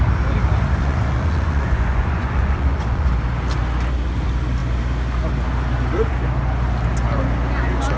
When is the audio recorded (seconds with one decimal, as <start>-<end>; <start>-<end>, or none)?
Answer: 0.0-0.8; 3.1-8.0